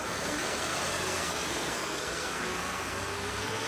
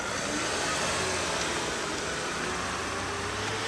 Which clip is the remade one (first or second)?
first